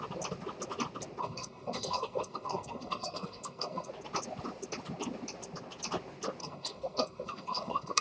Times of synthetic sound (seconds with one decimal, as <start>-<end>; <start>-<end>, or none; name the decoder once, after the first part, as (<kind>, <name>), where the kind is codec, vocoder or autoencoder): 1.2-3.9 (codec, SNAC); 6.4-8.0